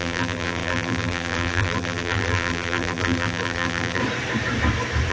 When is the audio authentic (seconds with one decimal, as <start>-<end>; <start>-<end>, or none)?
4.0-5.1